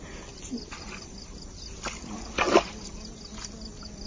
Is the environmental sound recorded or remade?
recorded